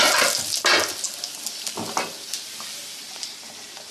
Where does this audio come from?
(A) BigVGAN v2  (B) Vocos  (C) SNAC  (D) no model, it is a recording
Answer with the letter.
D